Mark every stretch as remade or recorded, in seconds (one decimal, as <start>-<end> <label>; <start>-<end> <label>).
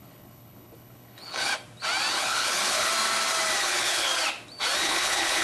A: 0.0-1.5 remade; 1.5-2.1 recorded; 2.1-2.9 remade; 2.9-3.6 recorded; 3.6-4.1 remade; 4.1-4.8 recorded; 4.8-5.4 remade